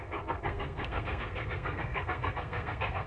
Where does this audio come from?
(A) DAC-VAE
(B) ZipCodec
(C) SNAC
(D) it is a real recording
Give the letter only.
C